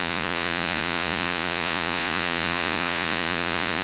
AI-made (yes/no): yes